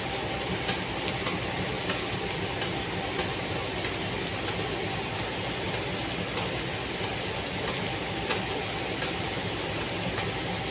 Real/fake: real